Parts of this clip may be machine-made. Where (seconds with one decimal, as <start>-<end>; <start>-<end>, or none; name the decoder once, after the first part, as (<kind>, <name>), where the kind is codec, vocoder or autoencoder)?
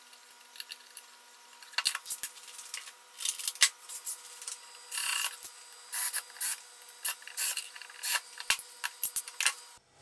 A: none